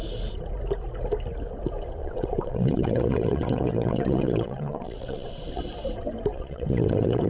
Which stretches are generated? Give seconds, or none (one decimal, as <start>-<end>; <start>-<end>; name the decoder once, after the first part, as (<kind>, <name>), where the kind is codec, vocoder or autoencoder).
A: 2.0-5.6 (vocoder, WaveNeXt); 6.3-7.3